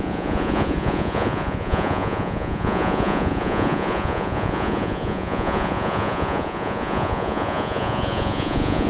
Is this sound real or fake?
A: fake